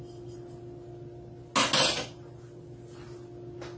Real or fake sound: real